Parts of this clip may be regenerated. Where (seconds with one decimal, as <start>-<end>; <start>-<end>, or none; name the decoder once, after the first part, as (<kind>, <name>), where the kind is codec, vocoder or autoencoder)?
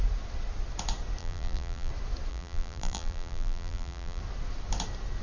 1.2-1.9 (vocoder, BigVGAN v2); 2.3-4.2